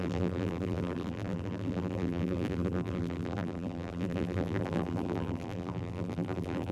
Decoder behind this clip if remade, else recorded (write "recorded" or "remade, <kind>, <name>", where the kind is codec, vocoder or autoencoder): remade, vocoder, BigVGAN v2